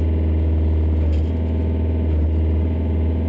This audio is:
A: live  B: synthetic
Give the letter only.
A